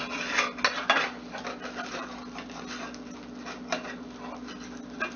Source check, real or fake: real